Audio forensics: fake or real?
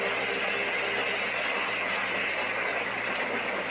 real